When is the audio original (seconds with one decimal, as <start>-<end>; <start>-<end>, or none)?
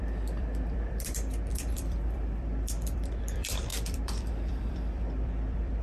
none